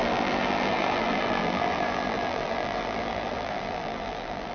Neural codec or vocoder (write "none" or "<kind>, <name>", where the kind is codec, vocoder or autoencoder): vocoder, BigVGAN v2